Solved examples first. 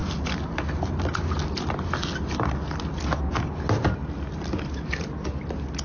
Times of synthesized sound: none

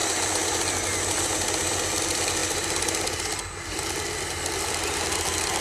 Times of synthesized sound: none

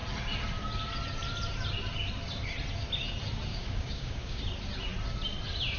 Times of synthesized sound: 3.5-4.4 (codec, DAC)

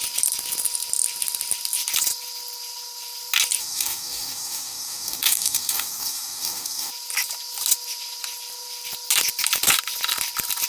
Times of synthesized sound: 3.6-6.9 (codec, DAC)

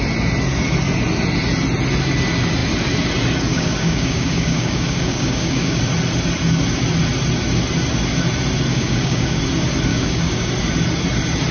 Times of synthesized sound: 3.5-5.8 (codec, DAC); 8.7-9.4; 9.9-10.5